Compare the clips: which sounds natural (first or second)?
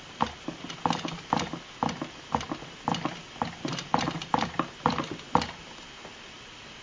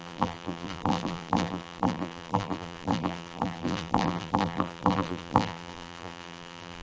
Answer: first